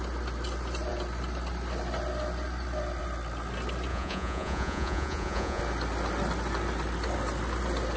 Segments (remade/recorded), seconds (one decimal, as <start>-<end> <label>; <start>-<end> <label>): 0.0-3.9 recorded; 3.9-5.6 remade; 5.6-8.0 recorded